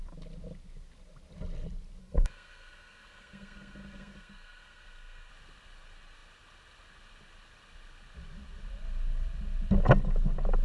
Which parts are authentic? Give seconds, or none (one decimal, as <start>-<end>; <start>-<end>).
0.0-2.0; 5.3-10.6